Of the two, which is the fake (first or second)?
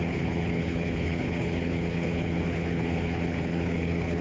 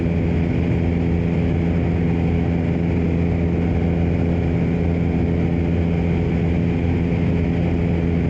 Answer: first